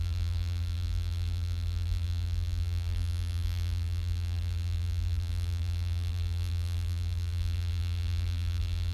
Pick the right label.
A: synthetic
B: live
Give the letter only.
A